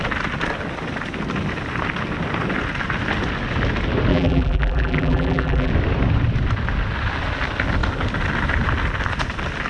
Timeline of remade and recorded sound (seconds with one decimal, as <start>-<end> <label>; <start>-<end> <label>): 0.0-4.1 recorded; 4.1-5.7 remade; 5.7-9.7 recorded